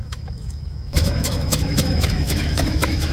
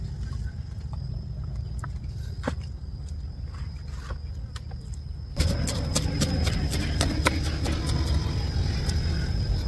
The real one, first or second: second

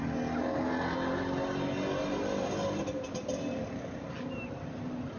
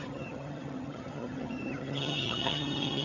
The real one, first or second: first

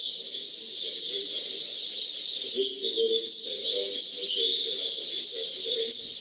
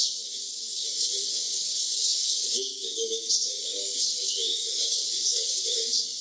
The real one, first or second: first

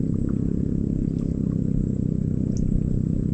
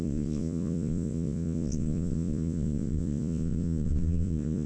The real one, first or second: first